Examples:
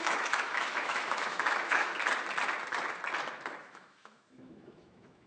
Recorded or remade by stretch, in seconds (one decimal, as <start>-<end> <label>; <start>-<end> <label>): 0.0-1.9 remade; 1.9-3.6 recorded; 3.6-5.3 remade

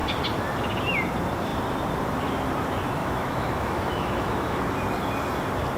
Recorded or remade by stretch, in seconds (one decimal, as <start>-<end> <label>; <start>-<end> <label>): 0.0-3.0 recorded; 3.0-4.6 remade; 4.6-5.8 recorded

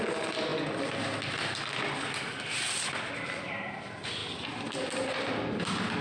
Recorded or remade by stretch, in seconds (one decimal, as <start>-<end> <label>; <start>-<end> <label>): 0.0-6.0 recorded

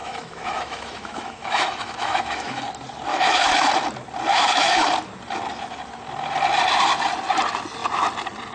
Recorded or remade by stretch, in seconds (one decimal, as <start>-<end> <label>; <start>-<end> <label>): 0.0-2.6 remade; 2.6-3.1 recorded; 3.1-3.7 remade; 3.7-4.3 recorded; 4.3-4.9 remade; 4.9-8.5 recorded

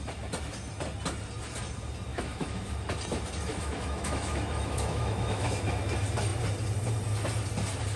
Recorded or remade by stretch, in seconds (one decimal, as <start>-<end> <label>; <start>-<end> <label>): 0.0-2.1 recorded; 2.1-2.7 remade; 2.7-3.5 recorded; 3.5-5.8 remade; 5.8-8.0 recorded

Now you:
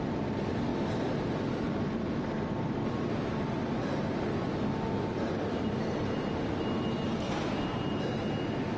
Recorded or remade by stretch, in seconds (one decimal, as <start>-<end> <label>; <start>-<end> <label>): 0.0-8.8 recorded

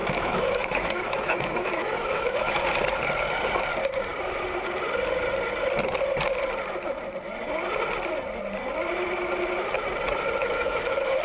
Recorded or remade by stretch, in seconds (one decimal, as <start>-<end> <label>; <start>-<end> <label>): 0.0-2.6 remade; 2.6-10.4 recorded; 10.4-11.2 remade